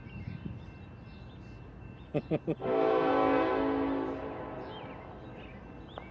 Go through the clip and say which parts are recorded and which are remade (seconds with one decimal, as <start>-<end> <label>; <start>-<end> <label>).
0.0-2.6 recorded; 2.6-3.1 remade; 3.1-6.1 recorded